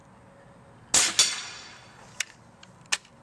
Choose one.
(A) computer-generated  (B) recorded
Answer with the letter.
B